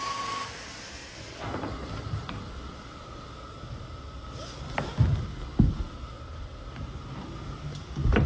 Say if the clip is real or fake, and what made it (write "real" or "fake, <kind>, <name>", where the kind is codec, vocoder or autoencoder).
real